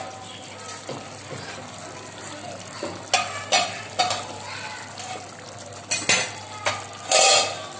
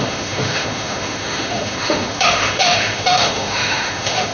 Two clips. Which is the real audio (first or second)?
first